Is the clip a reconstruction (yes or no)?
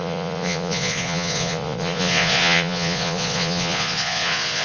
yes